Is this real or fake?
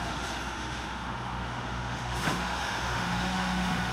fake